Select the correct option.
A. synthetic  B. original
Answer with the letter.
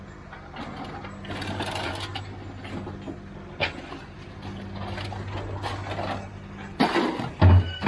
B